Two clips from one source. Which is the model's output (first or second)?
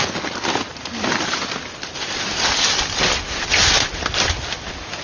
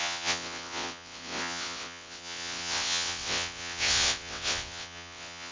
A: second